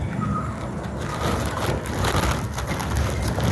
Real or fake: real